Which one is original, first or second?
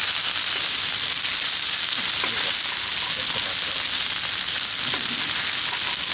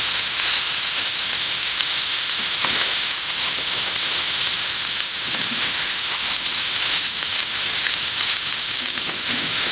first